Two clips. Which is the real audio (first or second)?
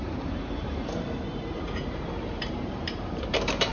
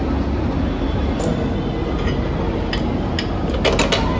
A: second